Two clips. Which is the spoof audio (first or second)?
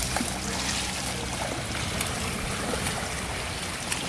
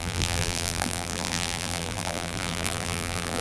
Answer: second